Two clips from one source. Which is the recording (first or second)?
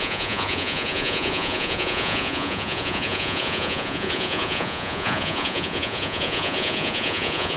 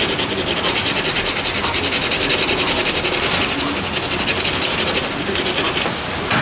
second